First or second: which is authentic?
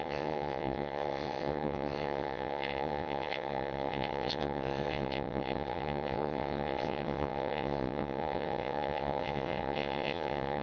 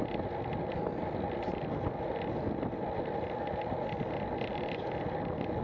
second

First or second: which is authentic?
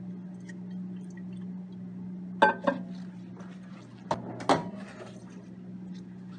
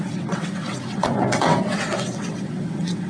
first